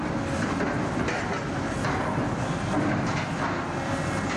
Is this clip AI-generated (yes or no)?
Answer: no